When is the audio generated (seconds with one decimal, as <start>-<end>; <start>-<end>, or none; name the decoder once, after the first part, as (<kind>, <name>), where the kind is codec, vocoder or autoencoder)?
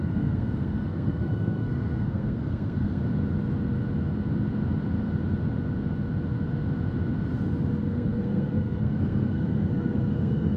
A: 0.0-3.0 (codec, SNAC); 7.8-10.6